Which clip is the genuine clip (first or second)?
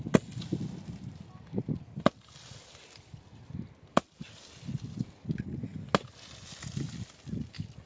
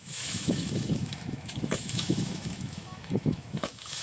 first